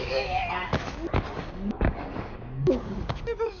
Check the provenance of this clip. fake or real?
fake